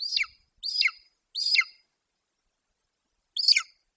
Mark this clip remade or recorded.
recorded